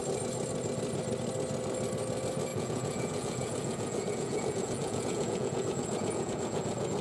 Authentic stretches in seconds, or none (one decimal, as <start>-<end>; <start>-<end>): 0.0-2.5